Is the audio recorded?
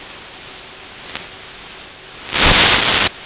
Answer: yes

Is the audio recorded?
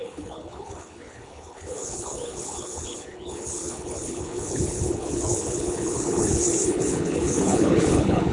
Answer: no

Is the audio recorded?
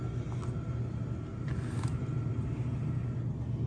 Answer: yes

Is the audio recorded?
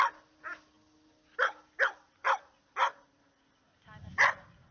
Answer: yes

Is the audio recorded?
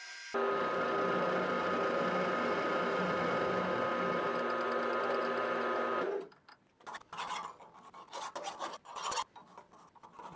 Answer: yes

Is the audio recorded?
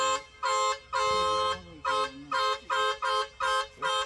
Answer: yes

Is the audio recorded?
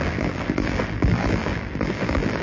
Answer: no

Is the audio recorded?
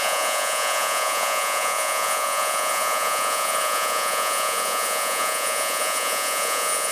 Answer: no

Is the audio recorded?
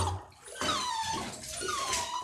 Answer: yes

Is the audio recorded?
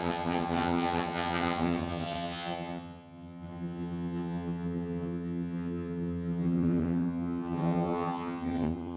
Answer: no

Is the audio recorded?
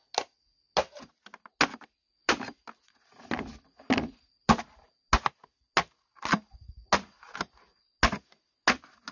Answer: yes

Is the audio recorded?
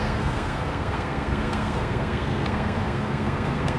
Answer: no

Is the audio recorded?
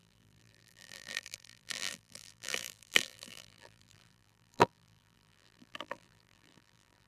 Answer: no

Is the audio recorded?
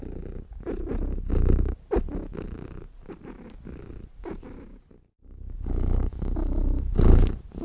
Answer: yes